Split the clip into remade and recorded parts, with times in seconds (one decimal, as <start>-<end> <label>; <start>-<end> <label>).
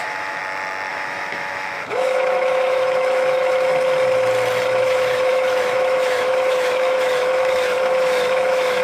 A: 0.0-0.4 remade; 0.4-0.9 recorded; 0.9-3.7 remade; 3.7-4.8 recorded; 4.8-8.8 remade